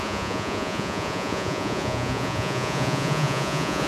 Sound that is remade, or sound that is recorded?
remade